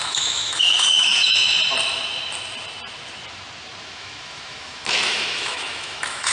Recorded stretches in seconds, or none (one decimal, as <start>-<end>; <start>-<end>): 1.5-3.8